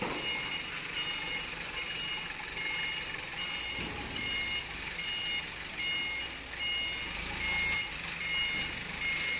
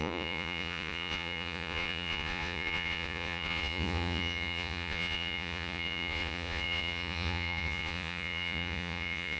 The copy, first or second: second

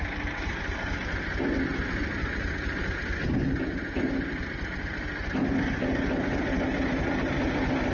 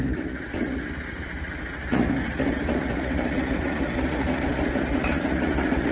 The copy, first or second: second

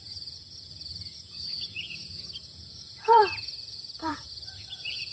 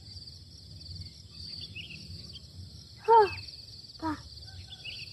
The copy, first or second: first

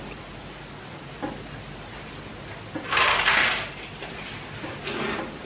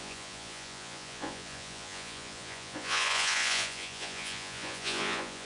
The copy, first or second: second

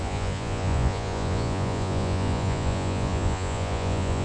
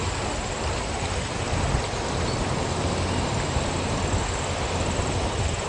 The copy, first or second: first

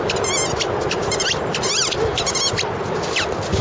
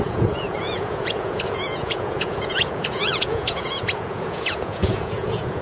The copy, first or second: second